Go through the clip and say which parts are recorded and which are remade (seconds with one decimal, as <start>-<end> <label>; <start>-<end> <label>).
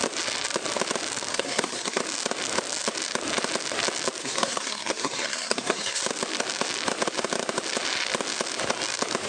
0.0-1.3 recorded; 1.3-2.0 remade; 2.0-4.2 recorded; 4.2-6.0 remade; 6.0-9.3 recorded